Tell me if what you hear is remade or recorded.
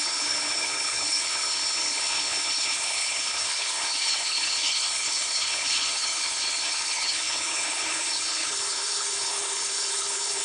remade